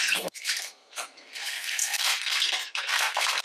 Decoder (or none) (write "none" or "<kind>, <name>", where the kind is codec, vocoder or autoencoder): codec, SNAC